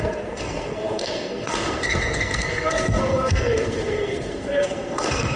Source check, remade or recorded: remade